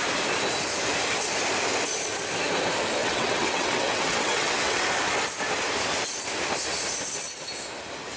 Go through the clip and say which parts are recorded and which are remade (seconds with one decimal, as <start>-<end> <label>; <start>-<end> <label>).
0.0-3.0 recorded; 3.0-4.8 remade; 4.8-8.2 recorded